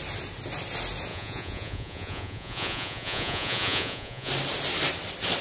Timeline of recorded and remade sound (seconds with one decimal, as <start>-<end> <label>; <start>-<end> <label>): 0.0-1.1 recorded; 1.1-4.3 remade; 4.3-5.4 recorded